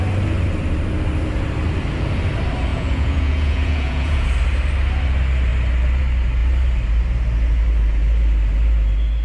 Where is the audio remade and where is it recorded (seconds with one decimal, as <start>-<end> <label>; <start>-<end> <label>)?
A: 0.0-2.7 recorded; 2.7-4.3 remade; 4.3-9.2 recorded